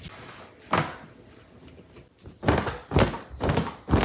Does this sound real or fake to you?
real